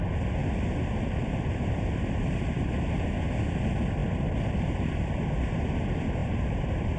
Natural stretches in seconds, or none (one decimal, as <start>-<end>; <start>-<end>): 0.0-0.4; 1.9-4.0; 5.8-6.2

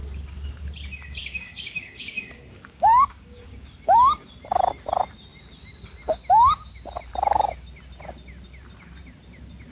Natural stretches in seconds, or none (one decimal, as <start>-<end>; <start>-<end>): 0.0-1.2; 3.7-9.7

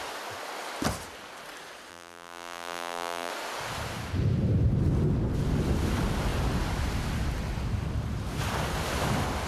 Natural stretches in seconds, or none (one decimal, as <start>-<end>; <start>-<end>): 0.0-1.9; 3.3-9.5

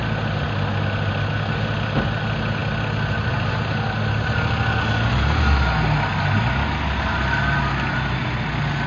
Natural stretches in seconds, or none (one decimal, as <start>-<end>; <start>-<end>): 0.0-8.9

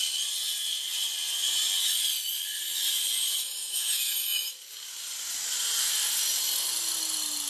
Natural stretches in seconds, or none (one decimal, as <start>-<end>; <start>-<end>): 0.0-3.4; 4.5-7.5

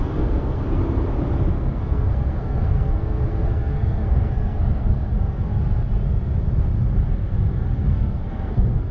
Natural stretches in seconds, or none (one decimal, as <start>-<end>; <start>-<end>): 0.8-1.5; 5.5-7.1